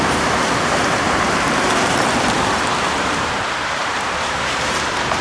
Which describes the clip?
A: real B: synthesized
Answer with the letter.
B